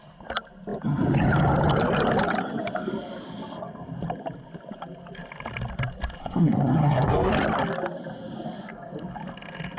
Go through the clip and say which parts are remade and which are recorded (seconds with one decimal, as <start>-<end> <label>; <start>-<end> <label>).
0.0-6.2 recorded; 6.2-7.3 remade; 7.3-9.8 recorded